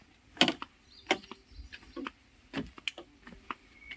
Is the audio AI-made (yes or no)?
no